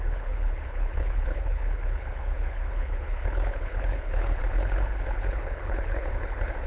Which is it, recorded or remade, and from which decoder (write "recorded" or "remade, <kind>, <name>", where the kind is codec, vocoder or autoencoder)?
remade, codec, HILCodec